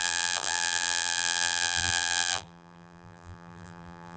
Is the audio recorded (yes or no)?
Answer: no